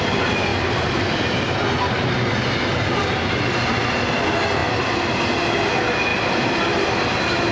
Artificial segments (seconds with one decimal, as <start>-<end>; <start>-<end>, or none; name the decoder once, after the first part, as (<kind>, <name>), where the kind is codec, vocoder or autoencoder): 0.5-1.1 (vocoder, BigVGAN v2); 4.6-5.1; 6.1-6.6